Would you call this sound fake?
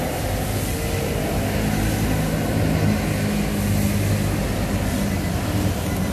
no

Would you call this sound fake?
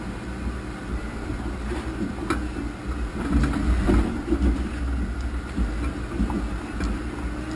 no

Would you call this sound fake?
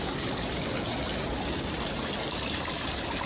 no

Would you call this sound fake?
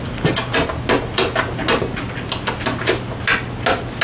no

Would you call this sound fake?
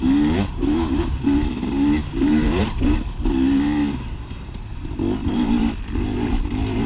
yes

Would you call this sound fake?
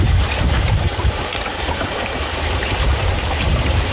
yes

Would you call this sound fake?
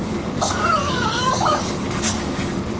yes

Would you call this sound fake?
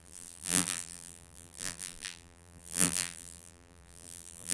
yes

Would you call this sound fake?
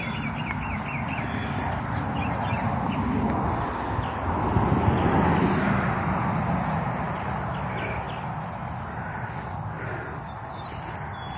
no